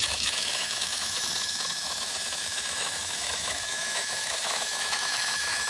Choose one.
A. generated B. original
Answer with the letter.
A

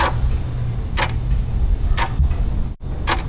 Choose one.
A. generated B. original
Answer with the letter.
B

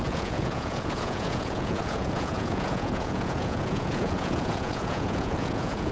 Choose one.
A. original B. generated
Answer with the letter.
B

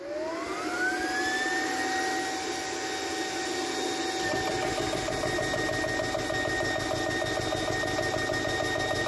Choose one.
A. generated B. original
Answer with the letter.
B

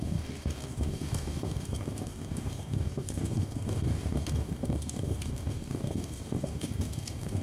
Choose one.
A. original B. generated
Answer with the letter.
B